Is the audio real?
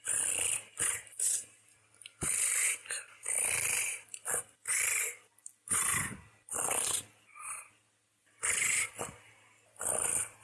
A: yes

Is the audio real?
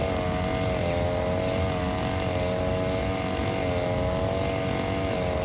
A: yes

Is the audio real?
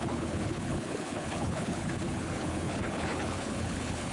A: no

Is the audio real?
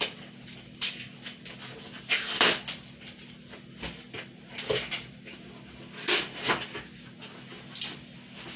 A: yes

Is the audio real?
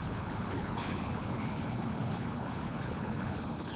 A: no